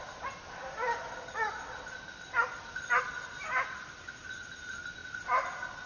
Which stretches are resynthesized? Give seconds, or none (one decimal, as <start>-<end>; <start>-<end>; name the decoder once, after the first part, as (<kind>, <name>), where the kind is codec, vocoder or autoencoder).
none